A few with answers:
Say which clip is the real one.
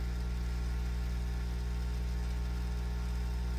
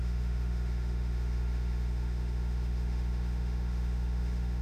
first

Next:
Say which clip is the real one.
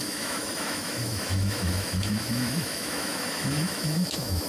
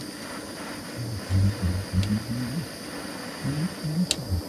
second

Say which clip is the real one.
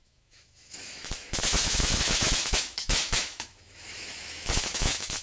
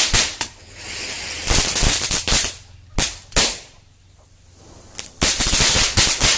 second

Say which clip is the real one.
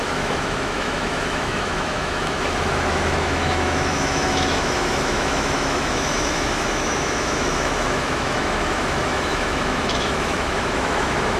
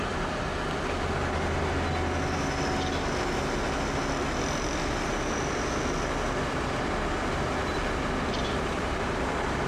second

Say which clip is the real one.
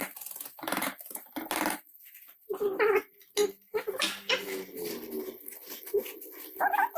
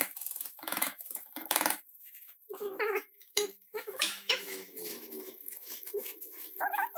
first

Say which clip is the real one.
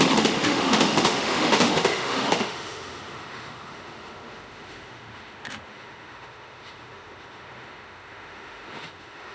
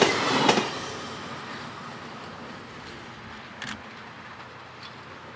second